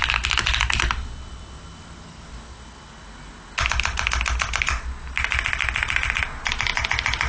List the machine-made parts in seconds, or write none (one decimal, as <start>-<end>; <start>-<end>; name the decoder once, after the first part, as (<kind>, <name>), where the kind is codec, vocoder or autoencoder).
none